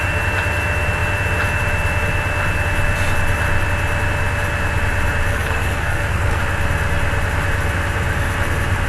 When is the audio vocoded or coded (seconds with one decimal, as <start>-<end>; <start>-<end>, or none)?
5.3-6.4